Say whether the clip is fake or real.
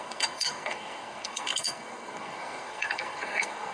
fake